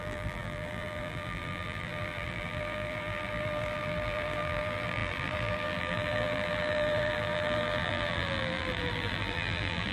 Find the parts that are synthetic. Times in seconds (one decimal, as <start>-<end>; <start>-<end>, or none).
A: 0.0-9.9